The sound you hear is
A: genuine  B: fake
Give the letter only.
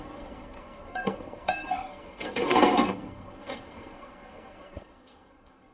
B